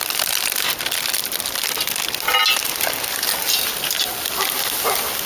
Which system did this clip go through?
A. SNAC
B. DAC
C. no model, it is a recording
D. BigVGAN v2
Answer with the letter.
C